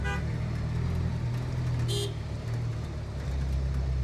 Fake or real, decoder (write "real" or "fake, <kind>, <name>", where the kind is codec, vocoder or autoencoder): real